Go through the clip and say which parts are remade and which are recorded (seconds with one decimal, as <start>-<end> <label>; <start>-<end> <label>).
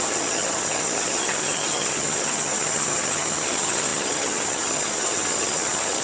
0.0-6.0 remade